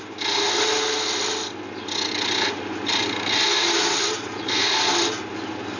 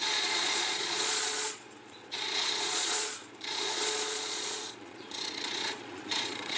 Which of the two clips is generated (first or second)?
second